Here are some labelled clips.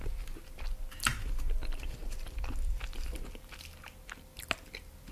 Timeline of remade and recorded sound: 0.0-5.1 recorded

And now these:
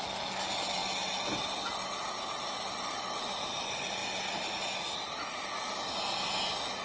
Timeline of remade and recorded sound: 0.0-6.8 recorded

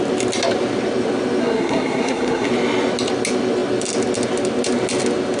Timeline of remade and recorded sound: 0.0-1.4 recorded; 1.4-2.5 remade; 2.5-5.4 recorded

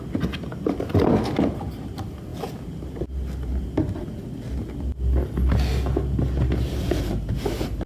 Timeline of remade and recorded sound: 0.0-7.9 recorded

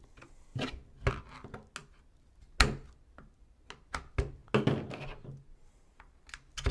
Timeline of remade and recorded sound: 0.0-6.7 recorded

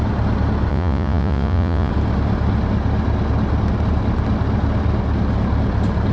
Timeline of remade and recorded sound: 0.0-0.7 recorded; 0.7-1.9 remade; 1.9-6.1 recorded

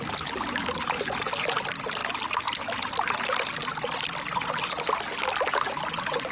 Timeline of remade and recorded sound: 0.0-6.3 recorded

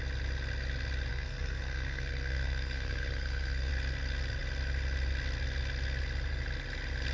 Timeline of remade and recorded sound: 0.0-1.1 recorded; 1.1-3.7 remade; 3.7-7.1 recorded